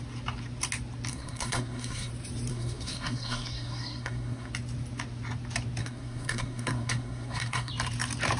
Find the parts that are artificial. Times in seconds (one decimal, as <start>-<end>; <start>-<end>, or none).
1.1-2.1; 2.5-4.5; 5.8-7.7